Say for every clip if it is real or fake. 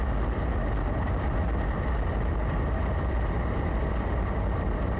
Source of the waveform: real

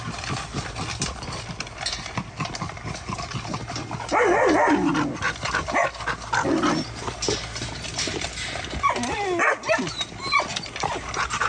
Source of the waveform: real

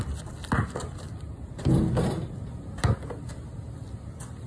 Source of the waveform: real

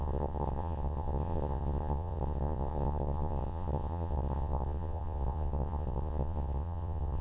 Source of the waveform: fake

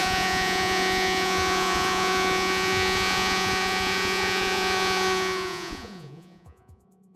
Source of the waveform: fake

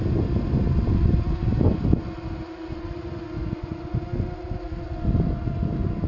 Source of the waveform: real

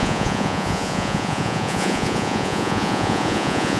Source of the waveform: fake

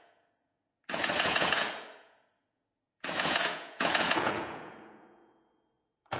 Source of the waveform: fake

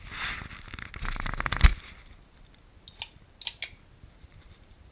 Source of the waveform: real